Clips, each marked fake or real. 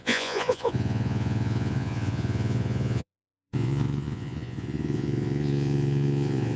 fake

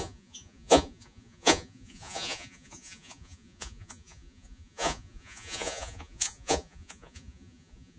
fake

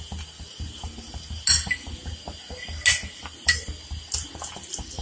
real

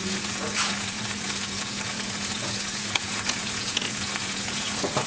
fake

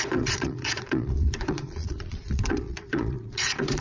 fake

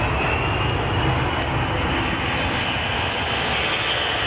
real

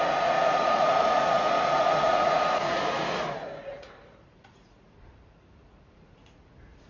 fake